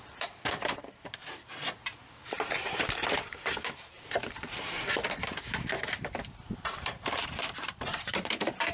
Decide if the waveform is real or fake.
fake